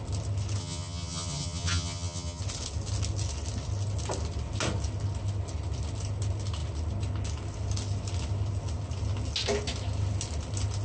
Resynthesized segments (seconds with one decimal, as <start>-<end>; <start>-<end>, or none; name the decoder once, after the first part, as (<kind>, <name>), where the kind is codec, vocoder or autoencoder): 0.6-2.4 (vocoder, HiFi-GAN)